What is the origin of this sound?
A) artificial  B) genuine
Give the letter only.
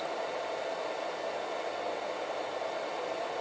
B